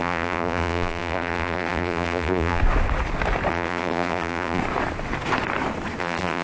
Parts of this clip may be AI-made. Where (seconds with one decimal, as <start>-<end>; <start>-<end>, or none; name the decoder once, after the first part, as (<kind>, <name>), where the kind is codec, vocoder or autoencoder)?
0.0-2.6 (vocoder, BigVGAN v2); 3.5-4.6; 6.0-6.4

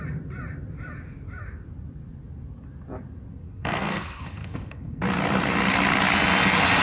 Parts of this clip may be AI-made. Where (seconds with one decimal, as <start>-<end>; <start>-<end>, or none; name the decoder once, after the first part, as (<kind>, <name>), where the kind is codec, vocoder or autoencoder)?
3.4-5.0 (codec, SNAC)

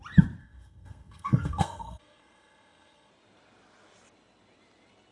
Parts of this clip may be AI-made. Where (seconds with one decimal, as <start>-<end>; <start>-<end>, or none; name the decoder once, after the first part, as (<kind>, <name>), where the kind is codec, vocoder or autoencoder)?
0.4-3.1 (codec, SNAC)

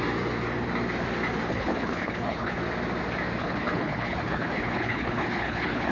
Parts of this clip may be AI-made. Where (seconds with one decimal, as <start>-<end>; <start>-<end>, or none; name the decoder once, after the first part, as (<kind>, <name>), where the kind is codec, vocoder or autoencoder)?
1.5-2.6 (codec, HILCodec); 3.4-5.9

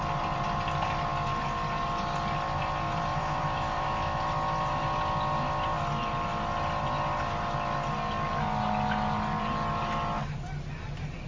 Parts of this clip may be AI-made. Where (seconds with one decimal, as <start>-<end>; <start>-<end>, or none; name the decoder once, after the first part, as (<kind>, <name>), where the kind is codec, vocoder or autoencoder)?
3.1-4.2 (autoencoder, DAC-VAE)

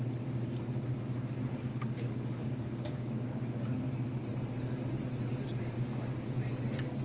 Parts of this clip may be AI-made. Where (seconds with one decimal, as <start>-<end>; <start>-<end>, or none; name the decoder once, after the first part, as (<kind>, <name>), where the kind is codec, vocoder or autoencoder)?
1.7-3.8 (codec, DAC)

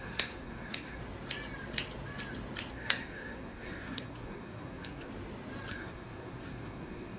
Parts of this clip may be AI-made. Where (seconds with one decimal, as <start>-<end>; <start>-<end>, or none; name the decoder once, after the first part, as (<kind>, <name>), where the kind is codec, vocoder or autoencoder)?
0.0-1.0 (codec, SNAC); 2.7-5.1; 5.7-7.2

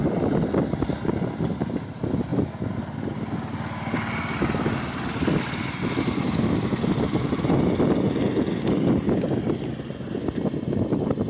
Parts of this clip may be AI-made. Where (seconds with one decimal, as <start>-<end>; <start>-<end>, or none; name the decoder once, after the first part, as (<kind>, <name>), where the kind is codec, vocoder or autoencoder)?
none